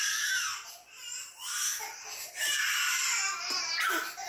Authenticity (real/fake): real